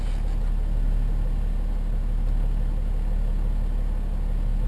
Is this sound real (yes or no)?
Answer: yes